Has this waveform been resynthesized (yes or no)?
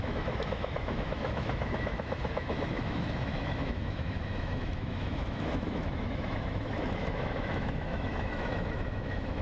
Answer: yes